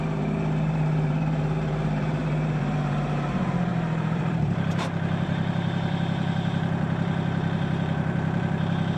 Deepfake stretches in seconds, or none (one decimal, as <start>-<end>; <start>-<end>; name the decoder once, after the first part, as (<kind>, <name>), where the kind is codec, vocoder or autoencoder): 0.0-9.0 (vocoder, BigVGAN v2)

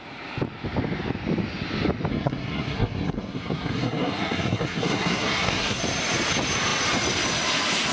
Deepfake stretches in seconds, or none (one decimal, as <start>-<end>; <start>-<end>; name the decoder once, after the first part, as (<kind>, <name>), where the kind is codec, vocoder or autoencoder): 2.1-5.8 (codec, SNAC)

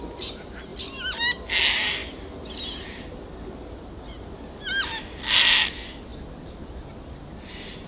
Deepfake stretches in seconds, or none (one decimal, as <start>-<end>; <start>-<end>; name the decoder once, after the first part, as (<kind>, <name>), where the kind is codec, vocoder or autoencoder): none

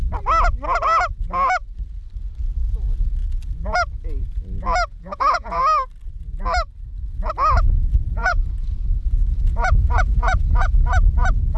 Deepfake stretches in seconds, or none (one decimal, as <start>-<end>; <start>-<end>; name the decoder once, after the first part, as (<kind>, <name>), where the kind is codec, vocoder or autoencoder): 4.9-5.6 (vocoder, Vocos); 8.2-10.9

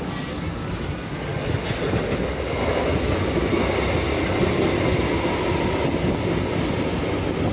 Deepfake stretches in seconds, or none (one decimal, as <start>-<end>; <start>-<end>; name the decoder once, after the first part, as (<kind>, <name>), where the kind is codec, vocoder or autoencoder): none

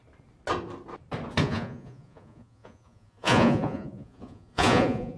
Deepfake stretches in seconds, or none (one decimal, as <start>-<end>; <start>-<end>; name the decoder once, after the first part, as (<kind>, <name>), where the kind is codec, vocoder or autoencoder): 1.4-5.2 (vocoder, Vocos)